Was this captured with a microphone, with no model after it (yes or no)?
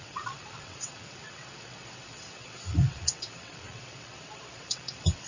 no